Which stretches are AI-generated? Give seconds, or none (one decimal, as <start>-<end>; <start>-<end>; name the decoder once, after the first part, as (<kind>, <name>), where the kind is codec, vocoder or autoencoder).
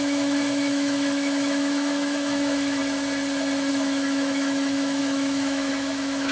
0.0-2.8 (autoencoder, DAC-VAE); 3.7-6.3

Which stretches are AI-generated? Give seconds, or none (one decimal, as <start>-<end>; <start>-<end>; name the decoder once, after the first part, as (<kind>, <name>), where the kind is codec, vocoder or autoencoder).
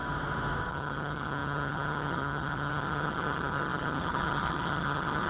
0.7-5.3 (vocoder, HiFi-GAN)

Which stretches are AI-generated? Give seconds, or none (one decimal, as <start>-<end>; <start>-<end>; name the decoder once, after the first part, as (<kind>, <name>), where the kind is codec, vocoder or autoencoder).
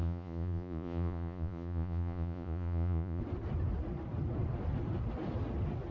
0.0-3.2 (vocoder, Vocos)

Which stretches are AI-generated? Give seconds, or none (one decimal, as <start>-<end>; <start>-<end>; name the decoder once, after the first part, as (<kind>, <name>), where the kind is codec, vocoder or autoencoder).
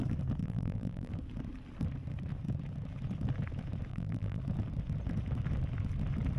0.4-1.1 (vocoder, BigVGAN v2); 3.9-4.4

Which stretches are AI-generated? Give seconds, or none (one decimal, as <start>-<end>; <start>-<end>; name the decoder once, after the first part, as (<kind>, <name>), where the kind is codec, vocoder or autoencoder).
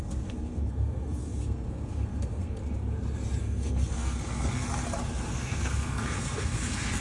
0.0-2.6 (codec, SNAC); 3.4-4.7; 5.3-7.0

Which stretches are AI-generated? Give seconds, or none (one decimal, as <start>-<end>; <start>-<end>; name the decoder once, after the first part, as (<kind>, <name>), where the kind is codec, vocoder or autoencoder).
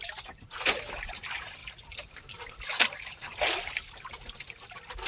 0.0-1.6 (vocoder, BigVGAN v2); 2.5-3.3; 4.1-5.1